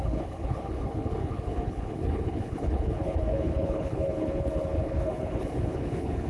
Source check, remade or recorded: remade